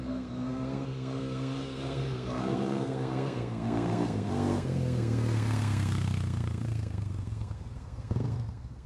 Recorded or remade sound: remade